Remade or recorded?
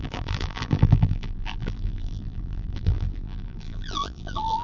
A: remade